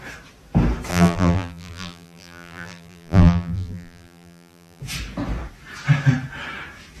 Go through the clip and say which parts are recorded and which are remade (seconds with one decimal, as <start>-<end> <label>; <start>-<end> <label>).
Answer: 0.0-0.9 recorded; 0.9-4.8 remade; 4.8-7.0 recorded